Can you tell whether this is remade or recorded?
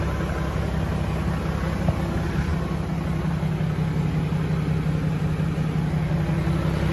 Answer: recorded